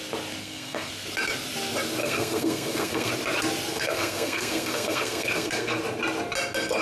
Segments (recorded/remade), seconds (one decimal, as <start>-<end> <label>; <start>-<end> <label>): 0.0-0.4 recorded; 0.4-0.9 remade; 0.9-2.0 recorded; 2.0-3.1 remade; 3.1-3.7 recorded; 3.7-5.8 remade; 5.8-6.8 recorded